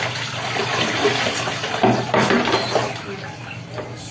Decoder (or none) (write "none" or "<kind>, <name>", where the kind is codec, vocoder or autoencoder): none